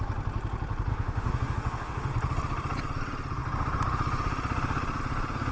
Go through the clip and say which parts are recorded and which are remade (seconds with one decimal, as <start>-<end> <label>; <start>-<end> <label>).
0.0-0.9 recorded; 0.9-2.1 remade; 2.1-5.5 recorded

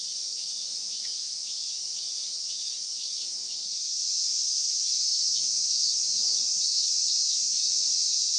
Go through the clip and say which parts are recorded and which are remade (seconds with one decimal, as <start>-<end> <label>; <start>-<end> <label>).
0.0-8.4 remade

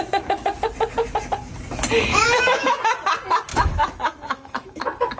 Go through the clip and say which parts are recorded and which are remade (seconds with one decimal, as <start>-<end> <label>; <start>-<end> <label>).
0.0-2.1 recorded; 2.1-2.8 remade; 2.8-3.5 recorded; 3.5-4.8 remade; 4.8-5.2 recorded

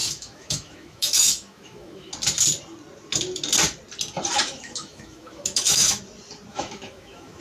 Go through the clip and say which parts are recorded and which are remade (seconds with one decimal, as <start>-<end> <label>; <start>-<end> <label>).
0.0-2.1 remade; 2.1-4.4 recorded; 4.4-6.0 remade; 6.0-6.5 recorded; 6.5-7.4 remade

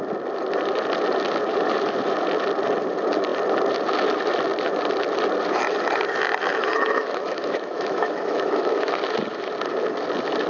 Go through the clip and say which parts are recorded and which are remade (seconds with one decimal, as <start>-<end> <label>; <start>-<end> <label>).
0.0-6.5 recorded; 6.5-8.9 remade; 8.9-10.5 recorded